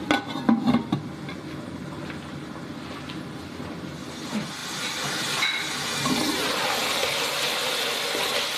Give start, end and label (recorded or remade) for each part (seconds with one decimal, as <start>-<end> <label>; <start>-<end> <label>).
0.0-8.6 recorded